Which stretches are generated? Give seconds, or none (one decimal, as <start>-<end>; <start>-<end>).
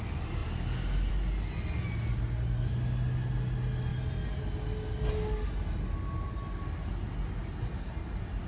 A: none